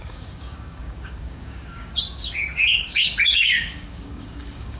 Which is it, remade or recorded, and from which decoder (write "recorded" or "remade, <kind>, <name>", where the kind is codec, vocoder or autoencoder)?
remade, codec, DAC